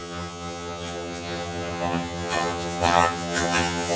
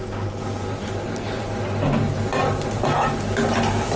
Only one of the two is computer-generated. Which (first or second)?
first